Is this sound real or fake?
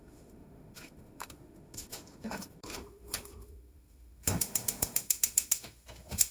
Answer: fake